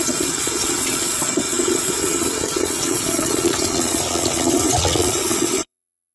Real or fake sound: fake